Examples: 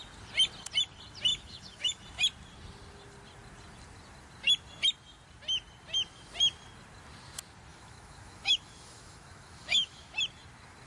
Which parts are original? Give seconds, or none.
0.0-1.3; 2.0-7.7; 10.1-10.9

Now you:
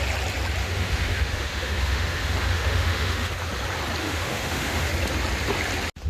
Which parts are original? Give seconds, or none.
0.0-0.6; 3.3-4.0; 4.9-6.1

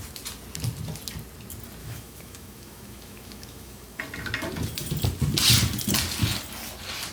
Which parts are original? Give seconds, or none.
0.0-1.8; 4.0-7.1

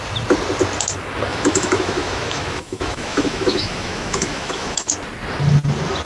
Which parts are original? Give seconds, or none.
0.0-1.3; 4.9-6.0

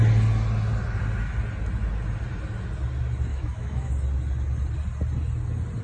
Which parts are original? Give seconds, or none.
0.0-3.3; 3.9-5.8

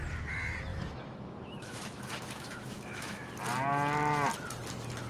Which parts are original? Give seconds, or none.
0.0-0.7; 3.3-5.1

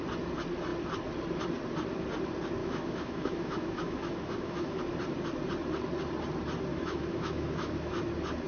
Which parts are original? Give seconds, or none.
0.0-2.6; 4.8-6.7; 8.0-8.5